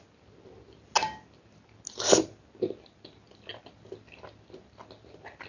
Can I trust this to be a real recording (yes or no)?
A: yes